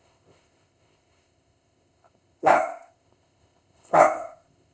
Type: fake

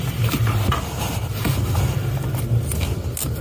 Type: real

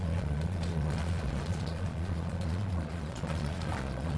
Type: fake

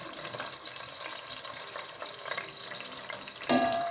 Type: fake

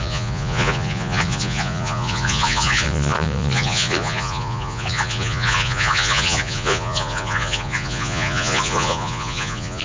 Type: fake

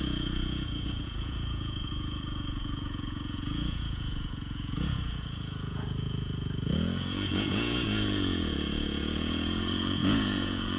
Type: fake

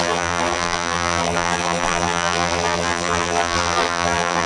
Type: fake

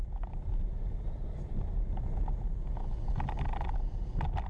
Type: real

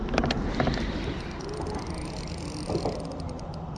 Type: real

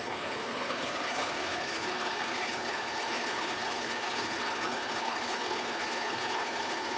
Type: fake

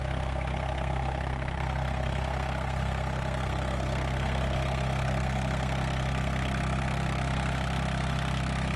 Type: fake